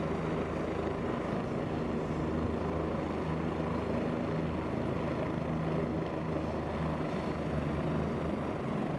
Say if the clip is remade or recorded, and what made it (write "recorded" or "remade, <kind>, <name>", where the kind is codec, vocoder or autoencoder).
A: recorded